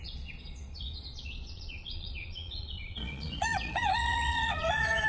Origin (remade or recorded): remade